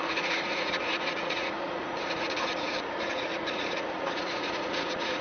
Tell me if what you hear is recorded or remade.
remade